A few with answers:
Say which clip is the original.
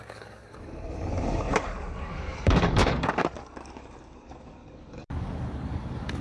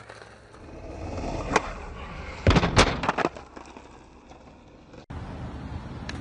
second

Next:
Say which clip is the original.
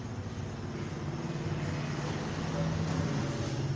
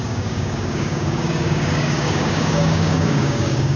first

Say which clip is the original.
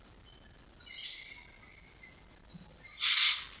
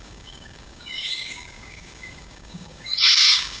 first